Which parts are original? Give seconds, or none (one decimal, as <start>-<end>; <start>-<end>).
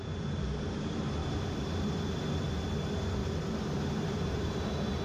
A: 0.0-3.2